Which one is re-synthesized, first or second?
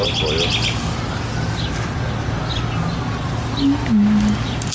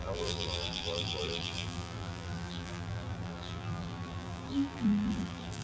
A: second